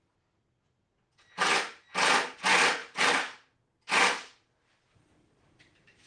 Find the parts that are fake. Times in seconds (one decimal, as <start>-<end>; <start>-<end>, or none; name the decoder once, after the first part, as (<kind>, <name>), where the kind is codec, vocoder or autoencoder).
none